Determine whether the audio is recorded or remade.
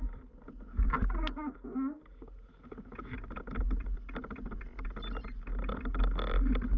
recorded